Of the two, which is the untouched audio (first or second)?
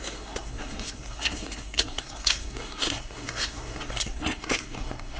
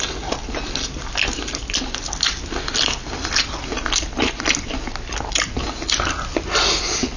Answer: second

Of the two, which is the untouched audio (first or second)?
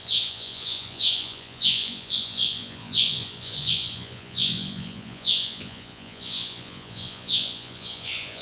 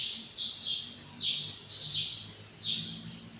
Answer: second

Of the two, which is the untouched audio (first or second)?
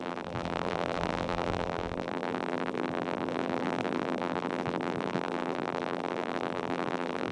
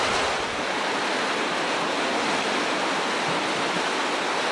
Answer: second